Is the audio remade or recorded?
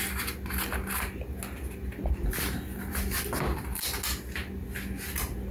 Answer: recorded